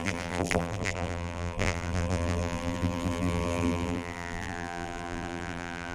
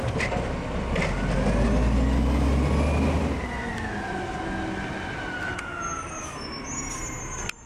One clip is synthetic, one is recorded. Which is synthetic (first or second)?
first